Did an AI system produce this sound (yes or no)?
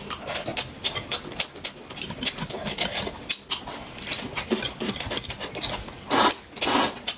no